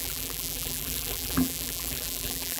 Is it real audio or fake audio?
fake